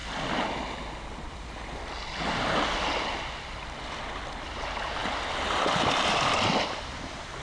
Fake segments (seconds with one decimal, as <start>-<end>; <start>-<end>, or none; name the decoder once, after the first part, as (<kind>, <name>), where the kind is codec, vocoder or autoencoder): none